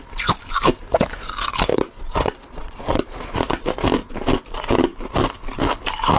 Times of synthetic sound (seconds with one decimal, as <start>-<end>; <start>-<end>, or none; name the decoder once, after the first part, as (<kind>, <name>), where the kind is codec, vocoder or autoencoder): 1.7-3.4 (vocoder, Vocos)